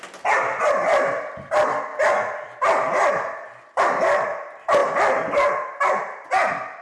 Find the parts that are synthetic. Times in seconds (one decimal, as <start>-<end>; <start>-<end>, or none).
none